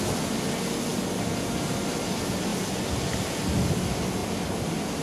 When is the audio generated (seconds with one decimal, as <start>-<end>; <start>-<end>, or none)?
none